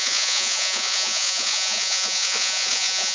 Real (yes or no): no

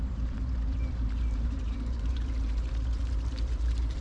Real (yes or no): no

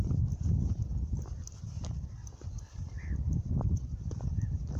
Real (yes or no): yes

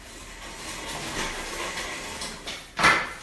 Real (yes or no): yes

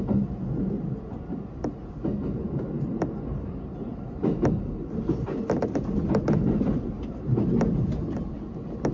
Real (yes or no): yes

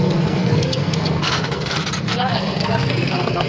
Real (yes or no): no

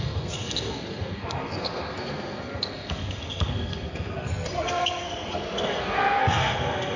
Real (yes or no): no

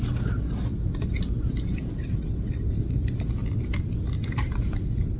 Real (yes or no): yes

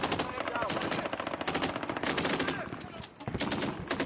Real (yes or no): yes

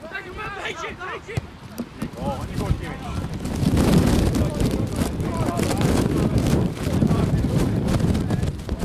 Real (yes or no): no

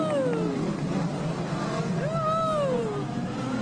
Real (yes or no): yes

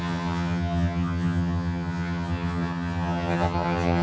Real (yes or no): no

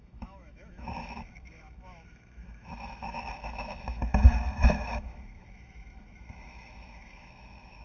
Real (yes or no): no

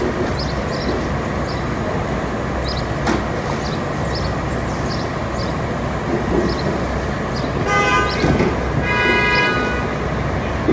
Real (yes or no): yes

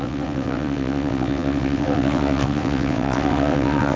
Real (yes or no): no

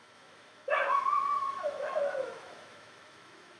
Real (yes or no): no